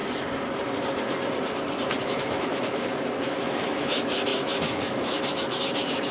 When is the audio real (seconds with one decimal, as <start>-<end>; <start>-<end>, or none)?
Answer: 0.0-2.0